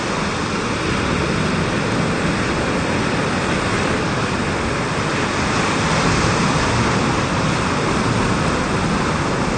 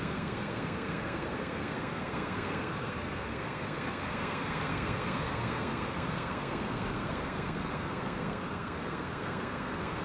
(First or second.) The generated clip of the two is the second